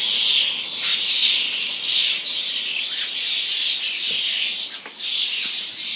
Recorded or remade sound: recorded